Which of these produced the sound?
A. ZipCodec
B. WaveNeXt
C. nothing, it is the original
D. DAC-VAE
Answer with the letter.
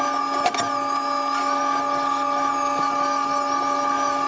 C